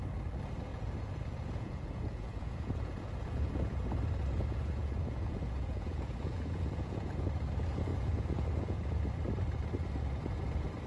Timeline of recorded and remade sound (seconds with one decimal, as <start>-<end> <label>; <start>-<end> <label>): 0.0-0.7 recorded; 0.7-3.9 remade; 3.9-4.3 recorded; 4.3-7.3 remade; 7.3-7.9 recorded; 7.9-9.0 remade; 9.0-10.9 recorded